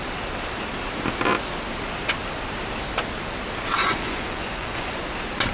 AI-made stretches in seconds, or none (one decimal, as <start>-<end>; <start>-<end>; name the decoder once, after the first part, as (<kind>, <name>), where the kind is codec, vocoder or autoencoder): 3.8-5.0 (vocoder, Vocos)